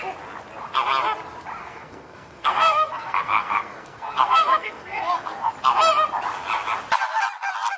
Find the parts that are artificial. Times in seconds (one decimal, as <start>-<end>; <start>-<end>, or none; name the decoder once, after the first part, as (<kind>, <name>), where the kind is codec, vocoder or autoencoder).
1.6-5.5 (codec, SNAC)